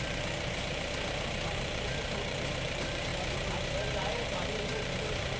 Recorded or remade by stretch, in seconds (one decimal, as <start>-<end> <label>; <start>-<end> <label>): 0.0-3.1 remade; 3.1-4.0 recorded; 4.0-5.4 remade